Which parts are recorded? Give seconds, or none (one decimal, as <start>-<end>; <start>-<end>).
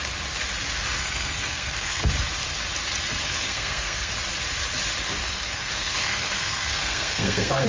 0.0-1.0; 2.1-3.2; 4.1-5.2